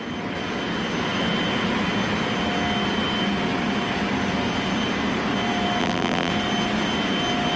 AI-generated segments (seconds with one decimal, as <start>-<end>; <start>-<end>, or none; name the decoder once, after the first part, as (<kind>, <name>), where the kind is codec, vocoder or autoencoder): 5.8-6.3 (vocoder, BigVGAN v2)

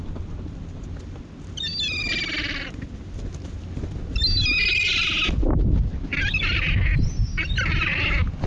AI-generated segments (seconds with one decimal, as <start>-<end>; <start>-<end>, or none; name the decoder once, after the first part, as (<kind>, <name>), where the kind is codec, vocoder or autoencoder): none

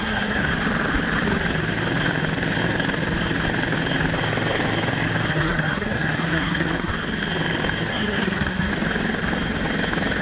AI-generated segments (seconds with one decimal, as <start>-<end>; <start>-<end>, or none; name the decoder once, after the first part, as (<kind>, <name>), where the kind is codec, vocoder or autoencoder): 0.0-0.5 (codec, SNAC); 5.3-6.9; 7.9-8.7

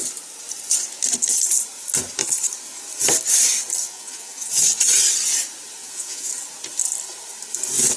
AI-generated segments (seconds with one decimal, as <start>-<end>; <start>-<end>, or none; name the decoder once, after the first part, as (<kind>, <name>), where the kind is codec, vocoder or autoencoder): 3.8-4.5 (vocoder, Vocos); 5.8-6.3

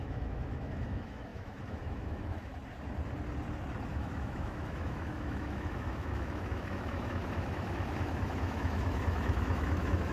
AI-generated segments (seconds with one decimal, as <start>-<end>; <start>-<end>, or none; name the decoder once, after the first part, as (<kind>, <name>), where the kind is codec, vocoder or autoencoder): 0.0-2.5 (autoencoder, DAC-VAE); 3.9-10.1

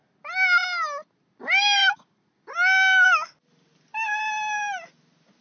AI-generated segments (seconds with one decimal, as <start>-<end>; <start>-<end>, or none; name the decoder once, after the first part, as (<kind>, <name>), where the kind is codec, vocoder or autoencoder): none